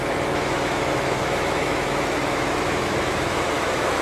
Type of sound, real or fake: fake